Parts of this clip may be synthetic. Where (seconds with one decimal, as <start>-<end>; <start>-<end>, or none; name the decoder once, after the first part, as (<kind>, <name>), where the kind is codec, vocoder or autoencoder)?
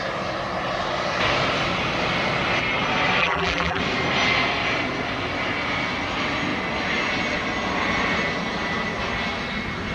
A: 3.2-3.8 (vocoder, BigVGAN v2)